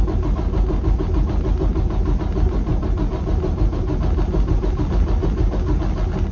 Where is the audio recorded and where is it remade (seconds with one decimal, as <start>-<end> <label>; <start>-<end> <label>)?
0.0-6.3 recorded